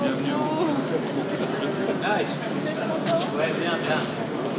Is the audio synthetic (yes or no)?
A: no